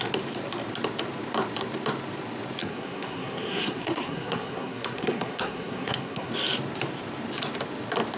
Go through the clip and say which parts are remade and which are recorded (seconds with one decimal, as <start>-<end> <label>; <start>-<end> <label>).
0.0-2.6 recorded; 2.6-6.3 remade; 6.3-8.2 recorded